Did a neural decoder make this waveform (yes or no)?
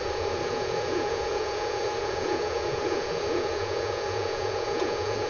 yes